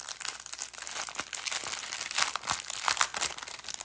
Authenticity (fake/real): real